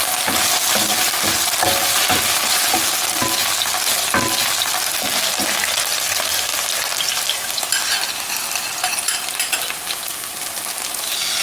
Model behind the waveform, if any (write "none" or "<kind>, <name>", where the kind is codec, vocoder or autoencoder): none